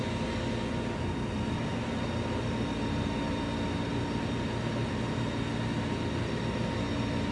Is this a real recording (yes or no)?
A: yes